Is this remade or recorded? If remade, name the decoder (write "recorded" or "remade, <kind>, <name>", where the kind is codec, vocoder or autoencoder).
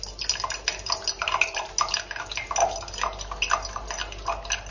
recorded